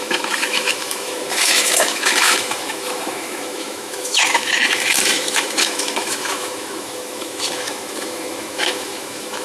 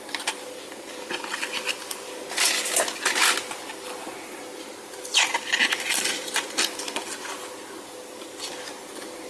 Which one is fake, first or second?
first